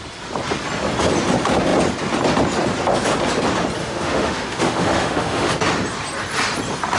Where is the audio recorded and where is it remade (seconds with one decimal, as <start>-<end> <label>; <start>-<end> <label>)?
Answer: 0.0-3.8 recorded; 3.8-5.5 remade; 5.5-7.0 recorded